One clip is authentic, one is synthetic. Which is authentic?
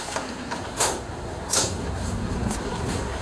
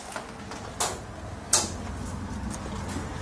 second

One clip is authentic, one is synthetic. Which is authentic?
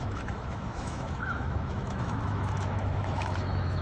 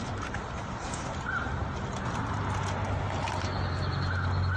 second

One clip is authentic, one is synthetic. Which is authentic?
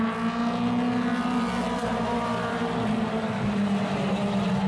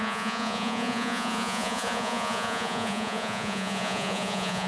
first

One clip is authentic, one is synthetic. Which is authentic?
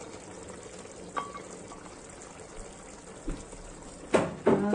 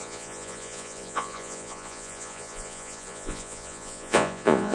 first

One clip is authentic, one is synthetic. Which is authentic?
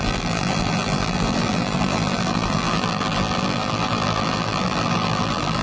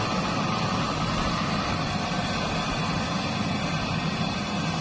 second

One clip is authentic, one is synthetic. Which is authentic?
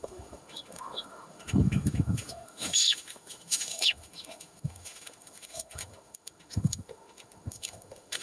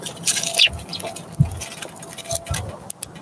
second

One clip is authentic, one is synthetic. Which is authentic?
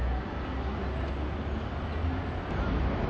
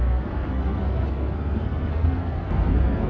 first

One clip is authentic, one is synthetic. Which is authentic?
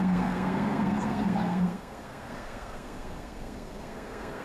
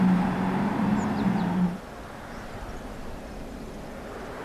second